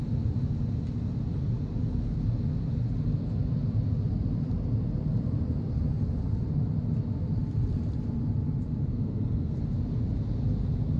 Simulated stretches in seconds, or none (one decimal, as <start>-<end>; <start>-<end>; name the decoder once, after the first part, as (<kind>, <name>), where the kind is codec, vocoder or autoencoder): 8.9-9.6 (codec, SNAC)